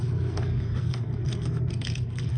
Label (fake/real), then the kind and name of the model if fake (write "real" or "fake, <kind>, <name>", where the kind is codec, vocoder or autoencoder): fake, codec, SNAC